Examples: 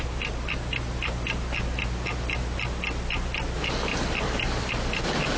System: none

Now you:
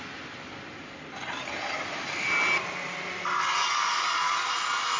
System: none